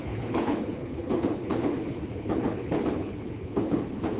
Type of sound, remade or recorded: remade